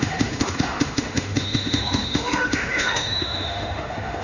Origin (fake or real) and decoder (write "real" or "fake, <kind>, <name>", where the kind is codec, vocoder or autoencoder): fake, autoencoder, DAC-VAE